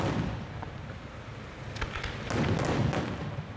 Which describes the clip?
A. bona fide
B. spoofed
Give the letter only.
A